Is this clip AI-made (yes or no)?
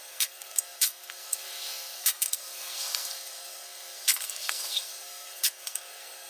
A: yes